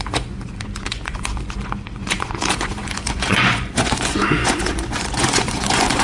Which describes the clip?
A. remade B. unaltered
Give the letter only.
A